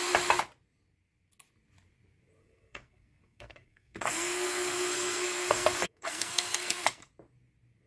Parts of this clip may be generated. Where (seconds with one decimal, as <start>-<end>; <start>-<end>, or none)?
2.4-7.1